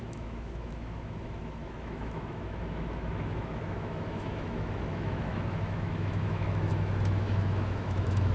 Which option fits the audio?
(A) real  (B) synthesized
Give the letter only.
B